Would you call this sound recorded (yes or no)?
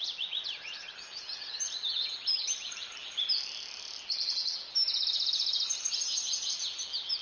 no